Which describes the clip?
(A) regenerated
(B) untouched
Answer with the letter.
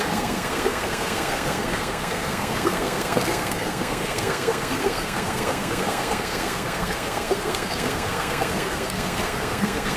A